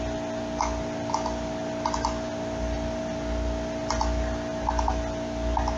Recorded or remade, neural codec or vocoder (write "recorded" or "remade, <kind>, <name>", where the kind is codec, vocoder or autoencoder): recorded